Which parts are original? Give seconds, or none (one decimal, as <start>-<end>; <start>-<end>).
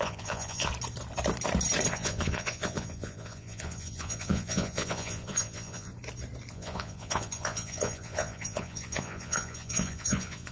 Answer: 0.7-1.9; 5.9-6.5